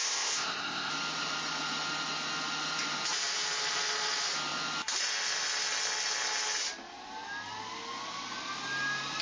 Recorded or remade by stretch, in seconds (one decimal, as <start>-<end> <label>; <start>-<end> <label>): 0.0-0.9 remade; 0.9-9.2 recorded